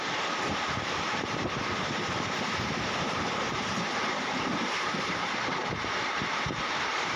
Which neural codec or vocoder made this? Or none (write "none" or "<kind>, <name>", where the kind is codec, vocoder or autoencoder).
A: vocoder, BigVGAN v2